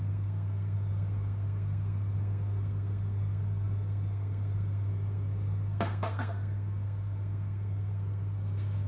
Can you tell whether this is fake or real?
fake